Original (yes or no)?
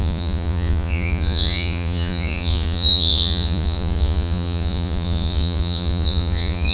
no